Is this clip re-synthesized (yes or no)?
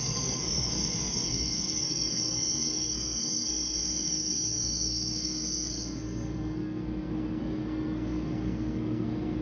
yes